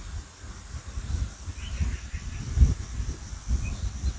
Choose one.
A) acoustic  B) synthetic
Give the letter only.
A